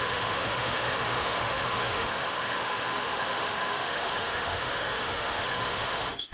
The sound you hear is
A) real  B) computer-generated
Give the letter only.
B